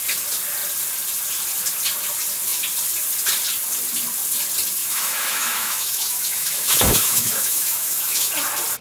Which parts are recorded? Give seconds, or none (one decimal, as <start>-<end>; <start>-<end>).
0.0-4.8; 8.3-8.8